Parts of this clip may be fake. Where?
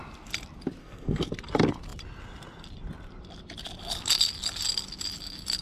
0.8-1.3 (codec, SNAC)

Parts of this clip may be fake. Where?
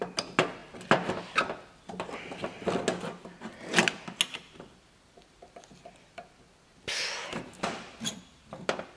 none